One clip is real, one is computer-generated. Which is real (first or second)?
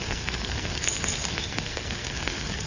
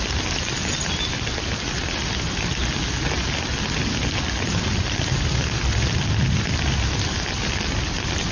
second